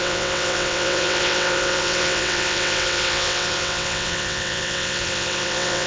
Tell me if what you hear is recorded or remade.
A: remade